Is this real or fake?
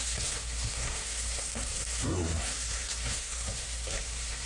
fake